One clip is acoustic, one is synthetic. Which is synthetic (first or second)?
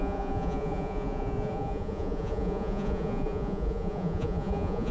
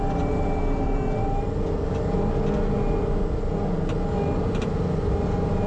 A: first